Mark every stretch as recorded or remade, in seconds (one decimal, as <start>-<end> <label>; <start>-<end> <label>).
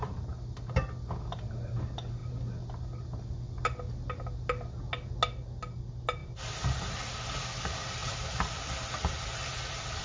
0.0-6.2 recorded; 6.2-6.9 remade; 6.9-8.0 recorded; 8.0-10.0 remade